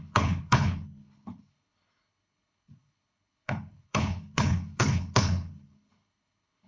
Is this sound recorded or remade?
remade